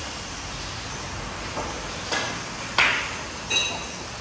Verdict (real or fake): real